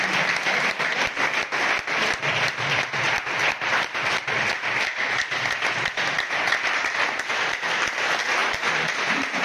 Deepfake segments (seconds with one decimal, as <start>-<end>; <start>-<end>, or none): 8.4-9.4